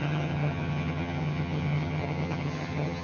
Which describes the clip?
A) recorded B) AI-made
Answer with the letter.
B